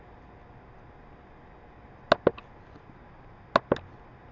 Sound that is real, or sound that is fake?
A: real